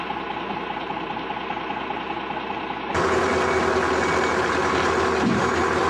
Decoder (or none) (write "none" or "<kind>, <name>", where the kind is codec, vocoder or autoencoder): none